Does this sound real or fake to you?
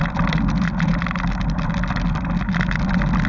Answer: real